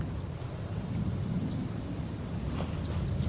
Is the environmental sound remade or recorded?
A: recorded